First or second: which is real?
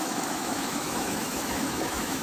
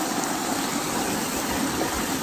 second